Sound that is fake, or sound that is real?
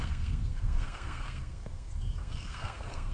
fake